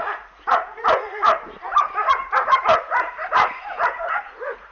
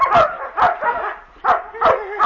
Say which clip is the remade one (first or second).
first